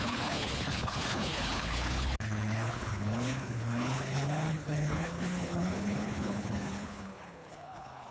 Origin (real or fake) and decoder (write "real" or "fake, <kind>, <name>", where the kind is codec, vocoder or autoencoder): fake, codec, HILCodec